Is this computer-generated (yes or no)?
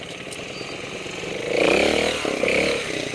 no